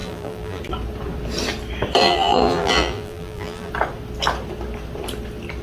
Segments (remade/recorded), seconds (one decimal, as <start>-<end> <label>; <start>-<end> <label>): 0.0-0.6 remade; 0.6-2.0 recorded; 2.0-3.7 remade; 3.7-5.6 recorded